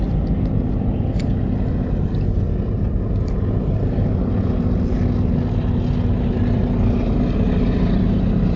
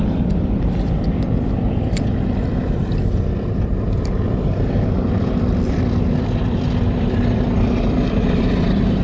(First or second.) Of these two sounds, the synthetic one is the second